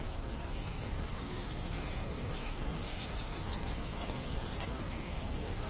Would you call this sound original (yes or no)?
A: no